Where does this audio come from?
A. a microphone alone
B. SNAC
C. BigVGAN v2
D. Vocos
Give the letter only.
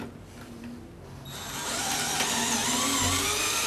A